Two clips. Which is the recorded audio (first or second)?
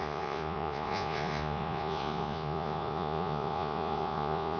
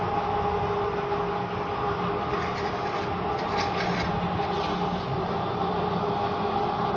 second